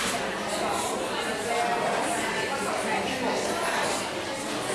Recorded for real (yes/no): yes